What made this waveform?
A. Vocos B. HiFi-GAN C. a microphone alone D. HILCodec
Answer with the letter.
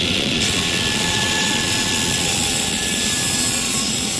A